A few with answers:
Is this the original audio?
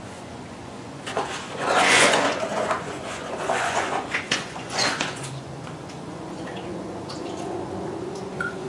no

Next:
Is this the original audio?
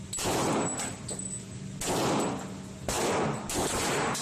yes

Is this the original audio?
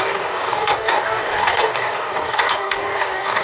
no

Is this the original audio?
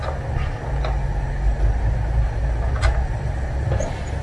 yes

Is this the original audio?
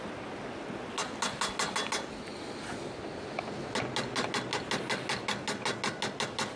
yes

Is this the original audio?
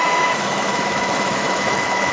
no